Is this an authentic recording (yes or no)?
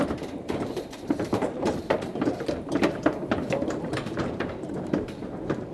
no